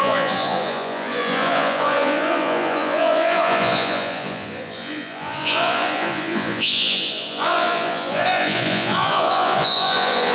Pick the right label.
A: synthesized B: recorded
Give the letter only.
A